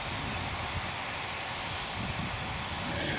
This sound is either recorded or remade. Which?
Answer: recorded